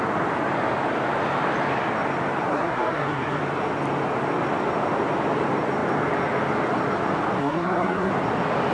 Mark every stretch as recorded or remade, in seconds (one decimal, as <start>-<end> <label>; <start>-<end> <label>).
0.0-2.5 recorded; 2.5-3.4 remade; 3.4-7.4 recorded; 7.4-8.1 remade; 8.1-8.7 recorded